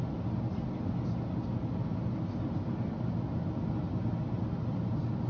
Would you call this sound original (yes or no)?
yes